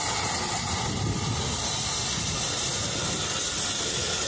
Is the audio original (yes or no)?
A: yes